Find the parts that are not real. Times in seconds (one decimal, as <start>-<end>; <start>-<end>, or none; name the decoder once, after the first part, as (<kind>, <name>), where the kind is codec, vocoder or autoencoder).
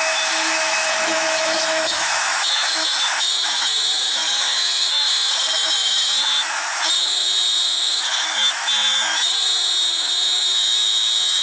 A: 0.0-11.4 (autoencoder, DAC-VAE)